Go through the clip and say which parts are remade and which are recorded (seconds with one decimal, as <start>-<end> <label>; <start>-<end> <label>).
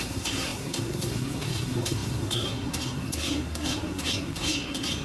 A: 0.0-5.0 remade